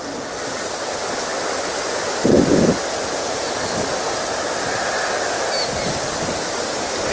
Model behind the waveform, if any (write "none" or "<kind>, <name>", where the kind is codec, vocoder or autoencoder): none